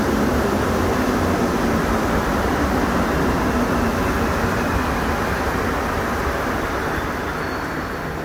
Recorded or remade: recorded